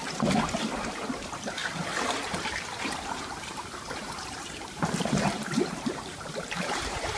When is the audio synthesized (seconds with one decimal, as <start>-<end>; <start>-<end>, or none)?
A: 0.0-1.6; 3.1-7.2